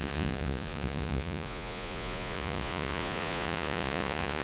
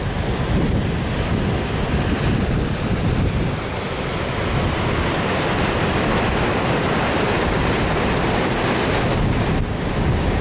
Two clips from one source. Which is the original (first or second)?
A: second